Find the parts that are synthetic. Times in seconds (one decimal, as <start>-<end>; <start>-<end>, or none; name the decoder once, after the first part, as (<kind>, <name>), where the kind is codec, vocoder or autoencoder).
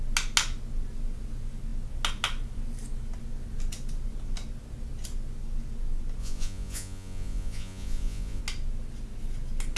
6.2-8.4 (vocoder, Vocos)